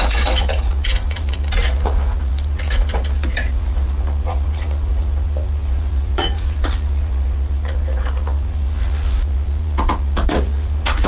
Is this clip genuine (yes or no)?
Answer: no